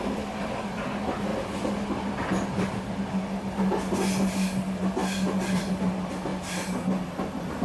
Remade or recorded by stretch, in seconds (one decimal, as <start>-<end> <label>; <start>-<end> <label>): 0.0-1.3 recorded; 1.3-2.9 remade; 2.9-7.6 recorded